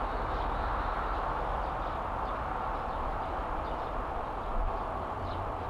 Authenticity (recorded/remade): remade